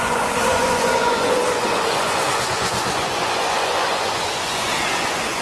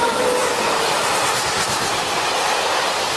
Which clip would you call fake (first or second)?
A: first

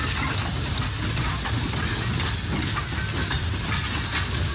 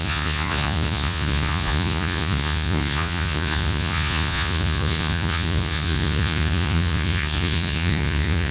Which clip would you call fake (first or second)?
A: second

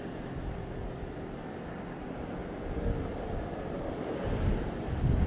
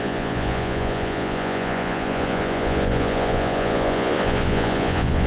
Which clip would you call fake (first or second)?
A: second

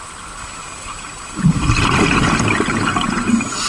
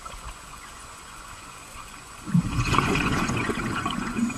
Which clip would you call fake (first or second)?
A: second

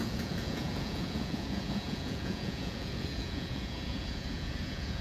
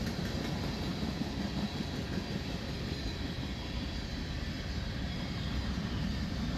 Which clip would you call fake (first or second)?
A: first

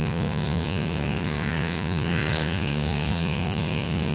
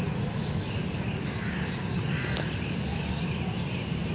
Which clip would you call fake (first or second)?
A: first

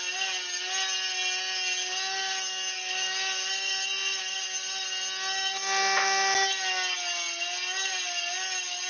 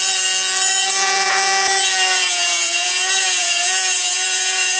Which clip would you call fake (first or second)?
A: second